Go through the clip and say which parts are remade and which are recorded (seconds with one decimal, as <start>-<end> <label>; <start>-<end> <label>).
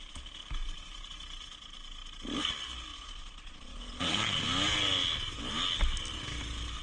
0.0-2.9 recorded; 2.9-4.4 remade; 4.4-6.8 recorded